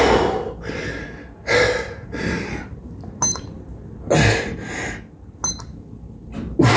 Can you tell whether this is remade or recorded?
recorded